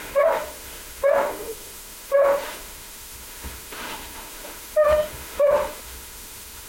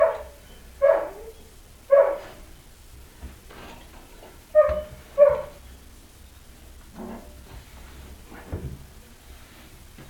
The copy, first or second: first